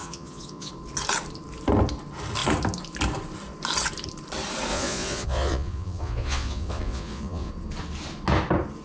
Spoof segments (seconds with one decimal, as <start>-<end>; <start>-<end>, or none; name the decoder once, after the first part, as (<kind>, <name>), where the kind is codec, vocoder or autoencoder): 0.0-0.7 (vocoder, Vocos); 4.7-7.5